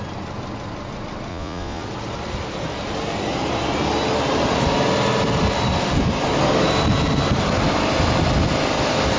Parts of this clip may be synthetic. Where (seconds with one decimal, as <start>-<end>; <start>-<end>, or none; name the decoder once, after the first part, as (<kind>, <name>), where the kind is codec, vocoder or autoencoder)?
1.3-1.8 (vocoder, Vocos)